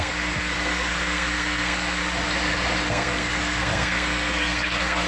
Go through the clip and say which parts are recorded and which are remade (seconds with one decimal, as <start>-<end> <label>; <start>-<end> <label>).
0.0-2.0 remade; 2.0-2.8 recorded; 2.8-5.1 remade